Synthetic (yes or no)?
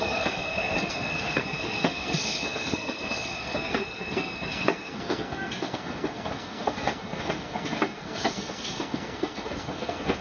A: yes